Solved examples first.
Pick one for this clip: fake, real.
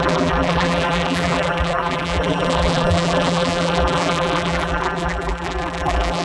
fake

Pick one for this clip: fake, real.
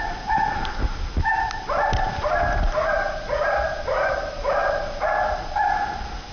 real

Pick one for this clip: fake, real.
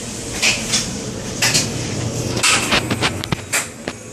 real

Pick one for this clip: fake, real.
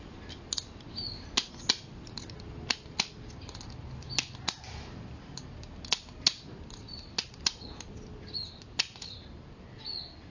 real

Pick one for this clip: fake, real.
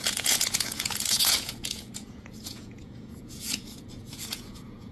fake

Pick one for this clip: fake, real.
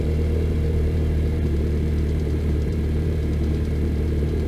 fake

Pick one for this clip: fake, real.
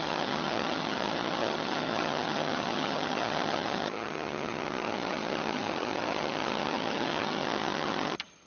fake